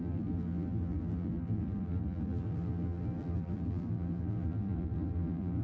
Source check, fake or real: fake